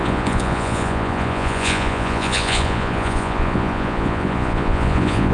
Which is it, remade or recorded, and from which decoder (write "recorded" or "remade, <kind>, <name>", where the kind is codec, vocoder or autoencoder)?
remade, vocoder, Vocos